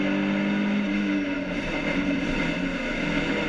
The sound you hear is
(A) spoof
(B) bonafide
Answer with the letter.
B